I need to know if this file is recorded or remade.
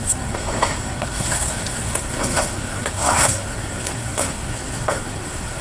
remade